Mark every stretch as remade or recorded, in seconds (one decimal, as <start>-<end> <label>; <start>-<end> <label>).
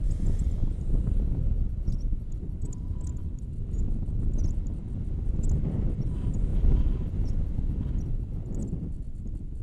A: 0.0-0.6 recorded; 0.6-3.2 remade; 3.2-6.5 recorded; 6.5-8.1 remade; 8.1-9.6 recorded